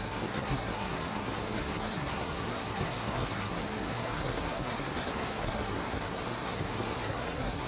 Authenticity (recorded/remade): remade